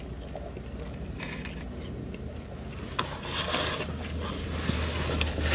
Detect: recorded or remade recorded